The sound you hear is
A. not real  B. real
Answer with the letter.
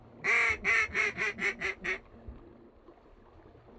B